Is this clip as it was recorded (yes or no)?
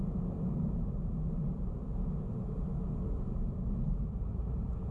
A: no